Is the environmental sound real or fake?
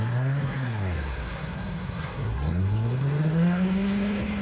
fake